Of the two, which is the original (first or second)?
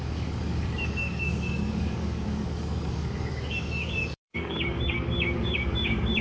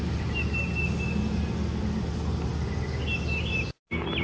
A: second